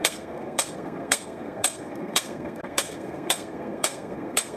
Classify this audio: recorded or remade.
remade